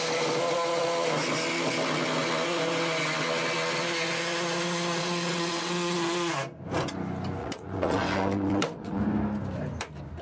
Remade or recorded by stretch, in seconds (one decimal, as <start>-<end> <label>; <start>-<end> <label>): 0.0-5.0 recorded; 5.0-5.7 remade; 5.7-7.4 recorded; 7.4-9.0 remade; 9.0-10.2 recorded